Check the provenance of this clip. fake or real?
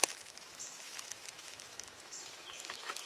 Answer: fake